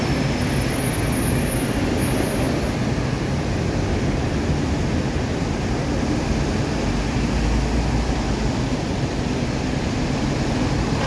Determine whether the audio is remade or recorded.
recorded